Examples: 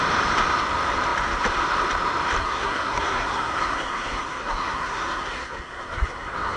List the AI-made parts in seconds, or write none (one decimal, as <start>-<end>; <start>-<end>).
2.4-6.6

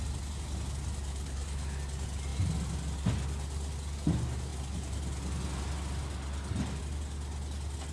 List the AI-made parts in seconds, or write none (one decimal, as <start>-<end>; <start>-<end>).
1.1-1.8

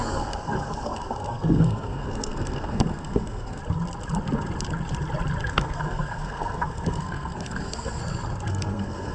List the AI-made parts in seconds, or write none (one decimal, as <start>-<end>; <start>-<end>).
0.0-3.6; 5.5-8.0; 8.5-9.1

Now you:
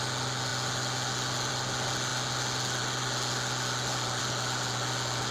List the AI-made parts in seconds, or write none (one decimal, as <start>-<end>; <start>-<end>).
none